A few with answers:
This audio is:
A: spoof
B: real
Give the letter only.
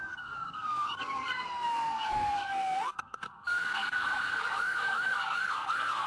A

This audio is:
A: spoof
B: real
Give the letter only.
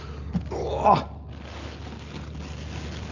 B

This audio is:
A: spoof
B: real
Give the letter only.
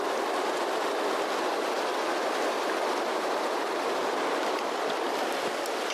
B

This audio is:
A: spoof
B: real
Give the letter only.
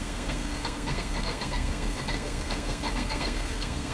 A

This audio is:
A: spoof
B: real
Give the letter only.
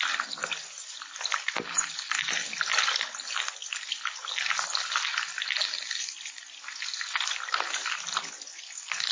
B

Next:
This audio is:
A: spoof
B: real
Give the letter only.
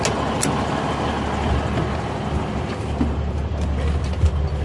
B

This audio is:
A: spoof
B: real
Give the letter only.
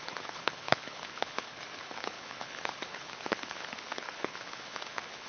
A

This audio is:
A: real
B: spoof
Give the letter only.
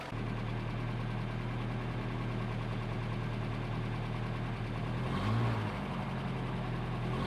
A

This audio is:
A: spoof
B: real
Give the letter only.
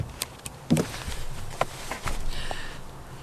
B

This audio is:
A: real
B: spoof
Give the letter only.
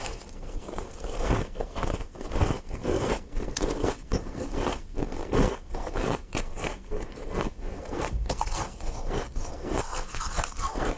B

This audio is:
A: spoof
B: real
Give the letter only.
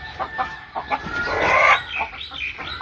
B